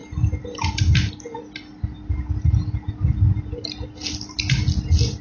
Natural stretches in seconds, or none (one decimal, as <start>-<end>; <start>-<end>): 0.0-5.2